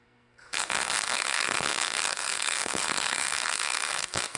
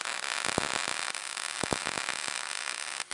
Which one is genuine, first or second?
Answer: second